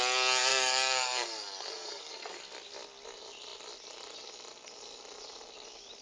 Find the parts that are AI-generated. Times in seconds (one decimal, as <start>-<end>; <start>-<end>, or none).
0.5-2.4

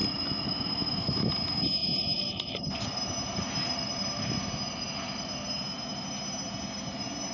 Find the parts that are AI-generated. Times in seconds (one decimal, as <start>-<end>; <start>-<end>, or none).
none

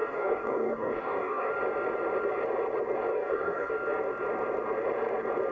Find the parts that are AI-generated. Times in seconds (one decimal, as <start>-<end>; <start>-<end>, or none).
0.0-1.5; 3.1-3.7

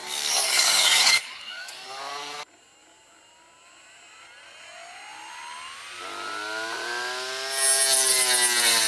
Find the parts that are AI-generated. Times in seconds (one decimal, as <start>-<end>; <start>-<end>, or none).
0.0-2.0

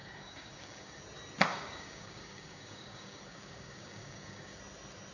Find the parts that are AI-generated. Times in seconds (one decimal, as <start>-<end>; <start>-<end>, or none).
0.0-1.0; 1.5-4.6